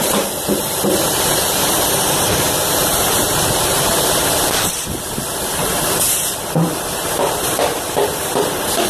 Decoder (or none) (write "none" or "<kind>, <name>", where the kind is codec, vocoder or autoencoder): vocoder, BigVGAN v2